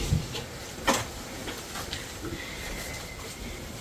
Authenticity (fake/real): real